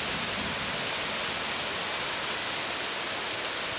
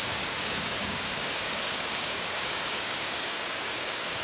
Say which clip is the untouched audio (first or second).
first